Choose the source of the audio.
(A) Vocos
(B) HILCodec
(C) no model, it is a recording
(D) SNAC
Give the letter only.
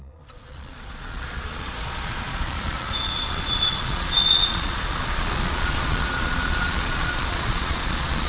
A